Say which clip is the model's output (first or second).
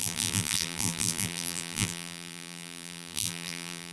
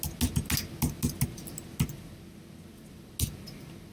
first